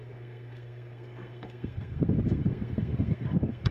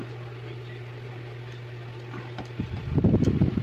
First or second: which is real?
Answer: second